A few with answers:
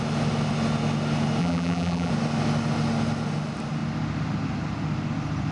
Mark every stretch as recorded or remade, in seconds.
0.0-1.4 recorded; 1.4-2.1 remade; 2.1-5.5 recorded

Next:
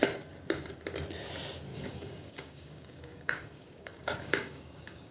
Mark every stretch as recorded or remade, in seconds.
0.0-1.7 recorded; 1.7-5.1 remade